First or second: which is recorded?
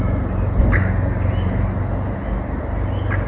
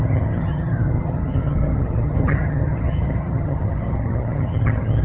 first